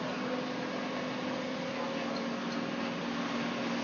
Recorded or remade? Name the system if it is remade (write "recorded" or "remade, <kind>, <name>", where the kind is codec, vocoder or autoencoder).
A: recorded